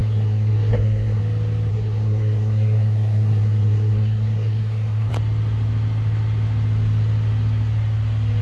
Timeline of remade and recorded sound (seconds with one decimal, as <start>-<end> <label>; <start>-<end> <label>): 0.0-1.2 remade; 1.2-1.7 recorded; 1.7-5.1 remade; 5.1-8.4 recorded